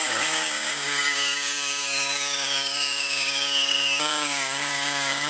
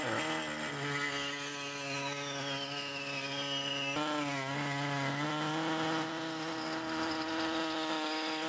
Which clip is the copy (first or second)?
first